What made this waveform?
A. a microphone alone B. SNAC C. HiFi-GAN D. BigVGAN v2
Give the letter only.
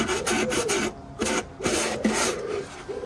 A